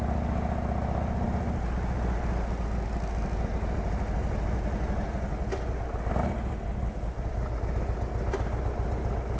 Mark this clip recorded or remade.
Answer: recorded